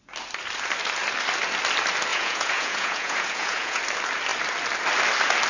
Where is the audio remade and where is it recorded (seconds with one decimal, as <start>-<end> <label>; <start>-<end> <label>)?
0.0-2.1 recorded; 2.1-3.8 remade; 3.8-5.5 recorded